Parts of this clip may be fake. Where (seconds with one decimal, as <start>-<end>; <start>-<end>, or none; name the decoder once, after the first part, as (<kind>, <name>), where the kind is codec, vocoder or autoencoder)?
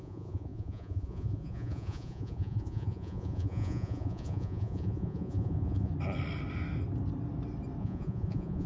0.0-5.9 (vocoder, Vocos); 7.8-8.7